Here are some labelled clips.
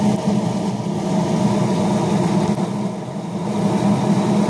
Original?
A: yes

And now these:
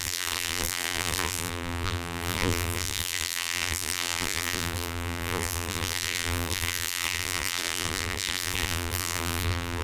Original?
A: no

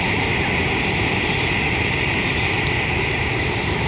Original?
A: no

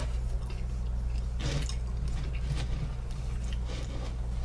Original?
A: yes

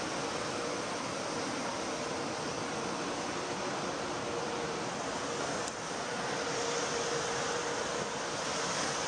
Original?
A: no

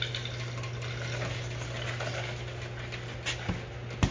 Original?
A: yes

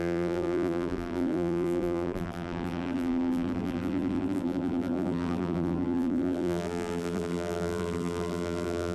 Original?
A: no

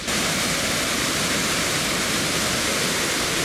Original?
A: no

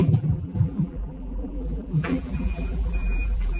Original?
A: no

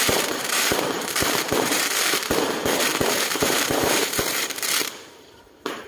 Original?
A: no